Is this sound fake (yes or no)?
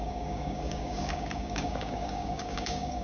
yes